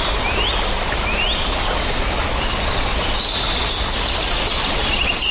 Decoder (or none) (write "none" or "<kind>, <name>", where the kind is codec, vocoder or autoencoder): none